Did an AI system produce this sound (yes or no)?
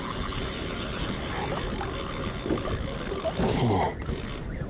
no